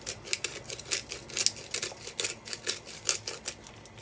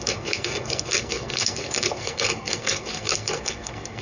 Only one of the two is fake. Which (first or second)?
second